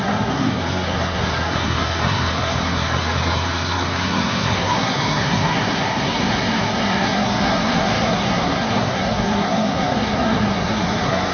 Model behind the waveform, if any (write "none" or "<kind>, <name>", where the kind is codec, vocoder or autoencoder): codec, SNAC